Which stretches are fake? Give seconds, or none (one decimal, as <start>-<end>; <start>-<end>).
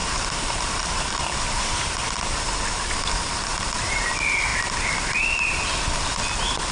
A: 0.0-2.5; 3.5-4.1